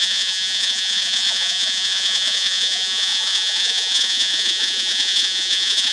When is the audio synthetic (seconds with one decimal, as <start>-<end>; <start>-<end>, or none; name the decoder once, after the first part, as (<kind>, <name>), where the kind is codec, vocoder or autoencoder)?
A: 0.0-5.9 (vocoder, Vocos)